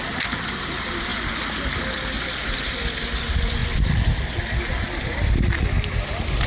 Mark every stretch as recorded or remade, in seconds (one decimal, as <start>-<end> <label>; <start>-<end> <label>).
0.0-6.5 recorded